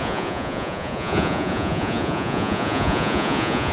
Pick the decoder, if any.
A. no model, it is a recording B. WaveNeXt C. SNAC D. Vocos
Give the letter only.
D